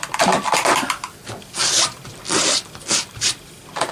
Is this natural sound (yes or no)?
yes